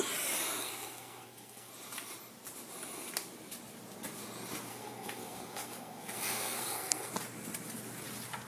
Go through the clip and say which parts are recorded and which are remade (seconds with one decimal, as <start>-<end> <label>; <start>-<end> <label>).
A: 0.0-0.6 recorded; 0.6-1.7 remade; 1.7-4.7 recorded; 4.7-7.1 remade; 7.1-8.5 recorded